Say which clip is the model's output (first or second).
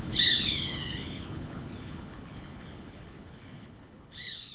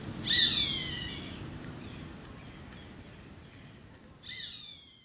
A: first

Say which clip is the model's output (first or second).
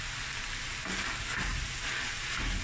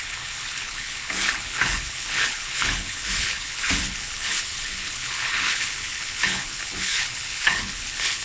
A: second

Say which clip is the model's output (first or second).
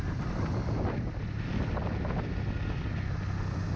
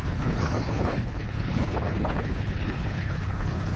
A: second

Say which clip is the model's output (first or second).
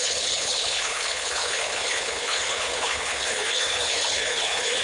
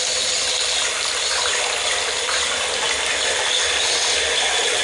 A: first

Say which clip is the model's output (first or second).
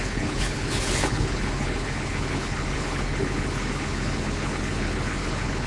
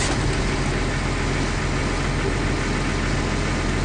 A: first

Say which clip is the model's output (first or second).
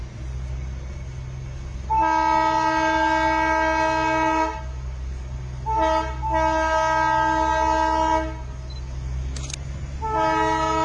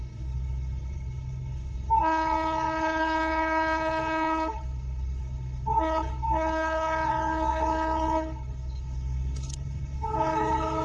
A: second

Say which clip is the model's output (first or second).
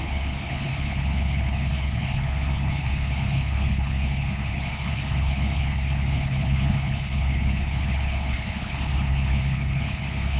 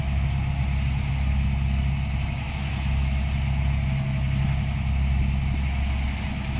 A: first